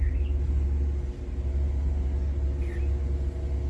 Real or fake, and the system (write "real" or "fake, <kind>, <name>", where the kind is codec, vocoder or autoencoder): real